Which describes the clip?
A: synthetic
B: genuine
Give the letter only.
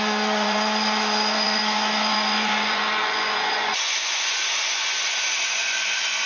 A